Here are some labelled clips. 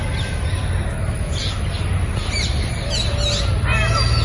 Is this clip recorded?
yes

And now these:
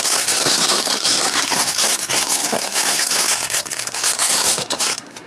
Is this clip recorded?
no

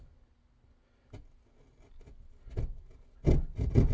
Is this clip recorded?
yes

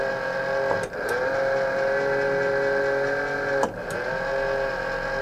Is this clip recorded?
yes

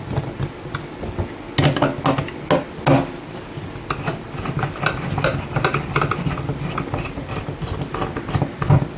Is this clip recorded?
yes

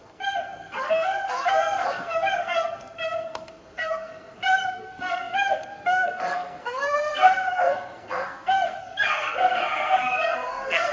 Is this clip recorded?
no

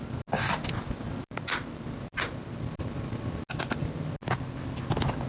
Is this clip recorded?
yes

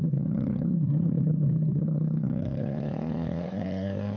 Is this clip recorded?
no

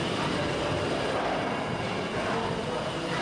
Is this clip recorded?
yes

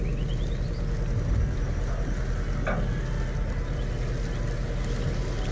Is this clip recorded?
yes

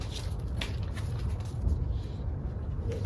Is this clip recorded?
yes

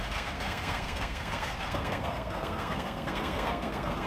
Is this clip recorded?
no